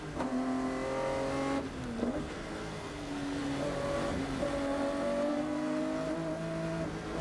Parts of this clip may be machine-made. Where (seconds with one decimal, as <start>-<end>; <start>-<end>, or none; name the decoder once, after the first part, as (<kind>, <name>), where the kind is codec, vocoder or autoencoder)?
2.0-3.4 (codec, SNAC); 5.3-5.8